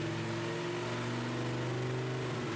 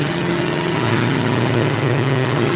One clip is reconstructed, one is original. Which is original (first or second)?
first